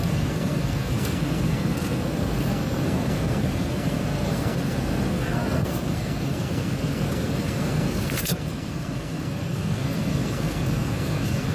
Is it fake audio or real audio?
fake